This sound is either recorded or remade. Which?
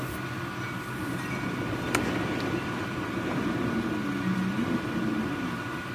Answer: recorded